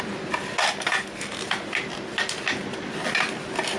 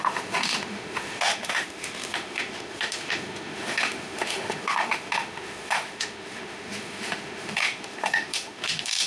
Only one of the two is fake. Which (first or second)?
second